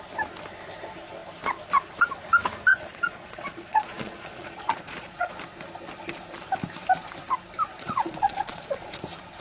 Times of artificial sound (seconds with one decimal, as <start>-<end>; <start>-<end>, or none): 2.7-5.3; 7.7-9.0